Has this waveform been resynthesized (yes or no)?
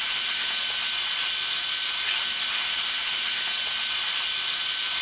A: no